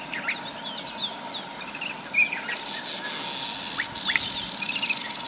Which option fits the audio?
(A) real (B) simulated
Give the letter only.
A